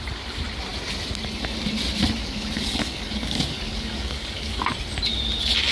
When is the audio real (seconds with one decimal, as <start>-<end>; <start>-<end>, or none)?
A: 0.0-2.2; 4.6-5.7